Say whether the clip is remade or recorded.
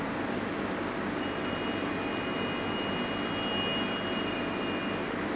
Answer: recorded